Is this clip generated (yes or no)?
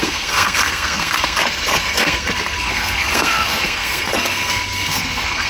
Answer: yes